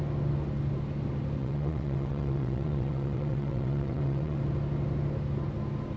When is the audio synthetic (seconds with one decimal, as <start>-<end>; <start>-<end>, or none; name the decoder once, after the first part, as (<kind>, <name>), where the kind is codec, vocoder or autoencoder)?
1.4-4.4 (vocoder, WaveNeXt)